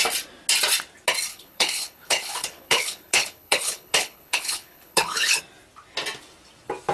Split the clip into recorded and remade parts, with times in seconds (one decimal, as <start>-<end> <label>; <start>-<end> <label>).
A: 0.0-1.3 recorded; 1.3-5.4 remade; 5.4-6.9 recorded